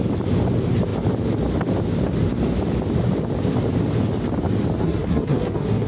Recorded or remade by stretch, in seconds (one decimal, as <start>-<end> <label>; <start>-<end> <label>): 0.0-4.8 recorded; 4.8-5.9 remade